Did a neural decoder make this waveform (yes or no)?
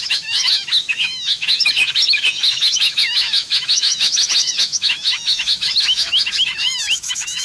yes